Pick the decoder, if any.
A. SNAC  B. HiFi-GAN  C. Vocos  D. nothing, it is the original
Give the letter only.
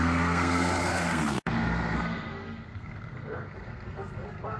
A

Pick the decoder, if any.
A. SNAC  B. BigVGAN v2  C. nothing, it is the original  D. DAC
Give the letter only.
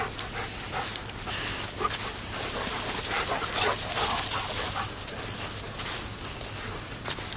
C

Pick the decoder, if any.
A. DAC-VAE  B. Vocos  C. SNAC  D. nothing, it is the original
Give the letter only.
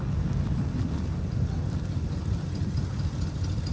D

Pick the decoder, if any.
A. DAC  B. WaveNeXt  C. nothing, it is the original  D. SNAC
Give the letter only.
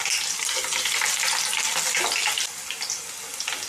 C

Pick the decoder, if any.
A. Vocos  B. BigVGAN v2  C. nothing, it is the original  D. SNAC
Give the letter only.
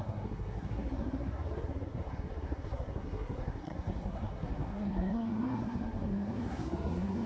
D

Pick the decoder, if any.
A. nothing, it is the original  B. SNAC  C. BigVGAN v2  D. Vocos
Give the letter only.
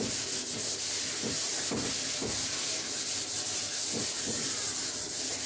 A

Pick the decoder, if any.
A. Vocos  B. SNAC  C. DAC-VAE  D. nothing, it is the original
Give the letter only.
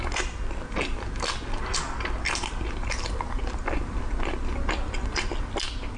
D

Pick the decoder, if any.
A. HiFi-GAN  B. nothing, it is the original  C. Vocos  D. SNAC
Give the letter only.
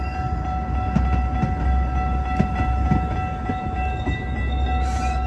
B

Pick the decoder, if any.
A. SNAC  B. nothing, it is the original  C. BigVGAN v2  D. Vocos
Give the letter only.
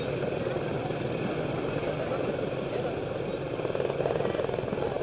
B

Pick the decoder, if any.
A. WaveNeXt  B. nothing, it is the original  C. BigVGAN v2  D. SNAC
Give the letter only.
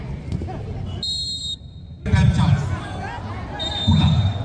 B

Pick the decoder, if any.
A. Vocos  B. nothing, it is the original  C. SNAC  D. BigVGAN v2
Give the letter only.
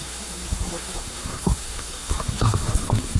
C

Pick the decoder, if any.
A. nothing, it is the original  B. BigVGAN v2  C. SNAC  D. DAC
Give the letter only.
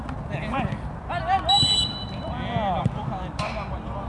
A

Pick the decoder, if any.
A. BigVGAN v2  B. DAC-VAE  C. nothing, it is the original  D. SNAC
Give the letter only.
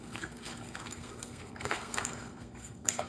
D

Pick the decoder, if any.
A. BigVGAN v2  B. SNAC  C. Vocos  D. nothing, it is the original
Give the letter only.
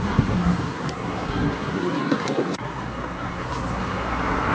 B